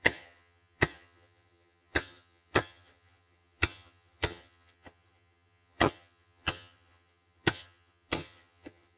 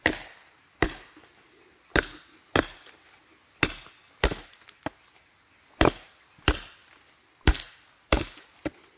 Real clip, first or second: second